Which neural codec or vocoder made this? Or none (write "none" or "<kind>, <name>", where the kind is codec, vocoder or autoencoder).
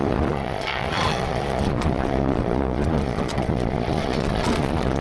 vocoder, Vocos